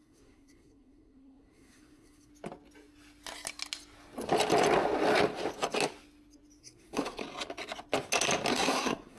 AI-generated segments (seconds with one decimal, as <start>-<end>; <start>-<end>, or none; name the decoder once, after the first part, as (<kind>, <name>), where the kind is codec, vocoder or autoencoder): 0.0-2.3 (codec, SNAC); 6.6-7.2; 8.5-9.2